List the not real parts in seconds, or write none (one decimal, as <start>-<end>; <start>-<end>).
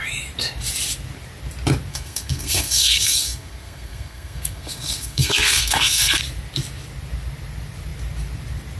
1.9-6.2